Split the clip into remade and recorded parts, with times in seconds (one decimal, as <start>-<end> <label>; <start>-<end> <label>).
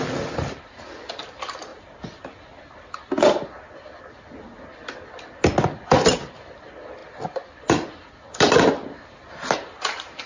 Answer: 0.0-10.3 recorded